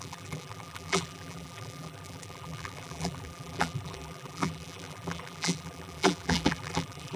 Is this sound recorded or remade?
remade